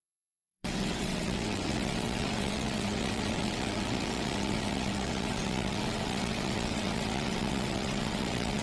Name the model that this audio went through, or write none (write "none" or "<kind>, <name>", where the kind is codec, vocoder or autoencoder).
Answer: vocoder, WaveNeXt